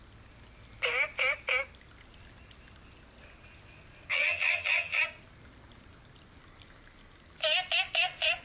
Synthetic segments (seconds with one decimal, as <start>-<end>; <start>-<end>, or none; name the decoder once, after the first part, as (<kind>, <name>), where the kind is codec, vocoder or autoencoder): 4.1-5.0 (vocoder, HiFi-GAN)